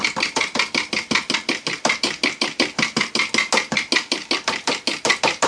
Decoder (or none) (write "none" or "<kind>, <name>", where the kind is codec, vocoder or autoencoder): none